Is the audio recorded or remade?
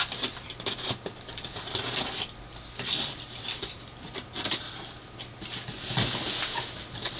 recorded